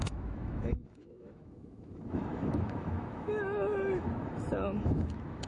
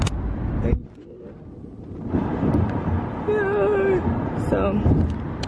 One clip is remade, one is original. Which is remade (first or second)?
first